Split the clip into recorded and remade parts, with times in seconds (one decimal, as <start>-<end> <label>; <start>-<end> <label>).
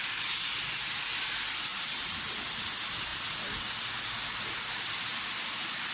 0.0-1.7 recorded; 1.7-2.6 remade; 2.6-5.9 recorded